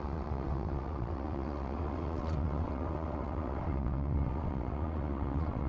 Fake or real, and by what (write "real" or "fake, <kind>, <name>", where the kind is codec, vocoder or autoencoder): fake, vocoder, WaveNeXt